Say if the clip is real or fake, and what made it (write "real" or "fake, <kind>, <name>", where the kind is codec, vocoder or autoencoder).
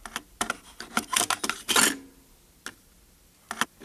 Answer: real